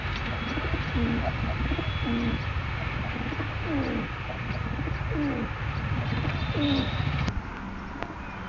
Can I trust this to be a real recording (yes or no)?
yes